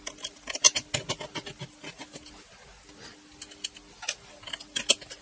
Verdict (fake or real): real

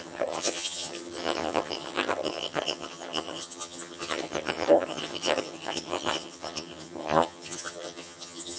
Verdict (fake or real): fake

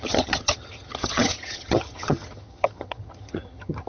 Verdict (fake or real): fake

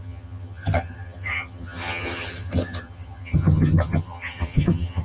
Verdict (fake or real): fake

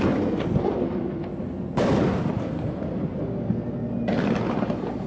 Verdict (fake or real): real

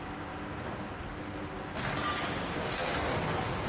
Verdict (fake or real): real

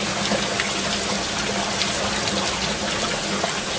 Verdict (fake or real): real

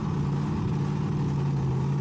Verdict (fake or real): real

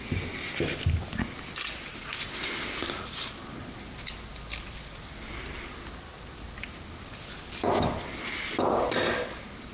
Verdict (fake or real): real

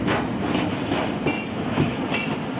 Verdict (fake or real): real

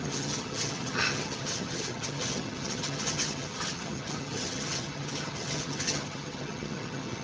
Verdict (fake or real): fake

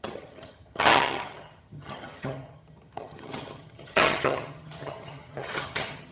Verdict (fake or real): fake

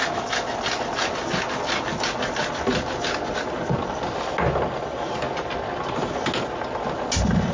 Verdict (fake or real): real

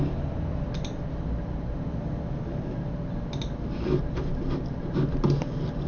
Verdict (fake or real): real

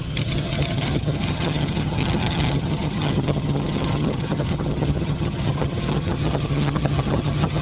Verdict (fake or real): fake